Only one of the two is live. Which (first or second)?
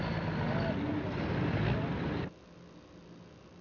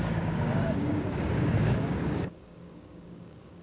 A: first